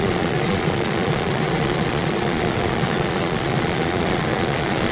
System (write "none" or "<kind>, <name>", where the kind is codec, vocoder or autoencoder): vocoder, Vocos